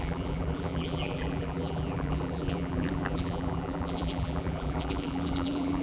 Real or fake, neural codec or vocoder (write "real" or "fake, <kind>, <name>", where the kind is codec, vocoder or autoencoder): fake, vocoder, BigVGAN v2